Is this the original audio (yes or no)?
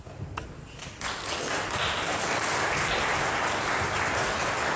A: yes